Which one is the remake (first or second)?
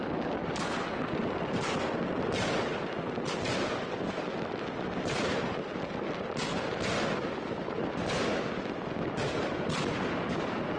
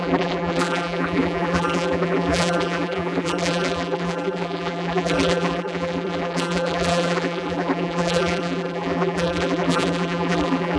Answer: second